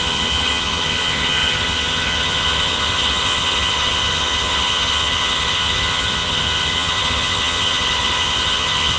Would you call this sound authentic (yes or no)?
no